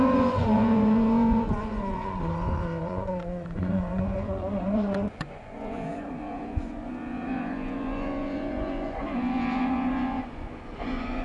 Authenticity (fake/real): fake